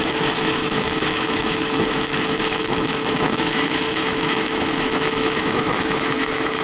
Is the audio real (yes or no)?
no